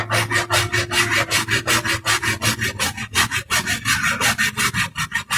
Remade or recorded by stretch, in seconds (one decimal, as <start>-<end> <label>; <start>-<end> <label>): 0.0-5.4 recorded